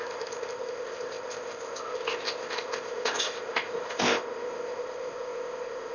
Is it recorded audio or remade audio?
remade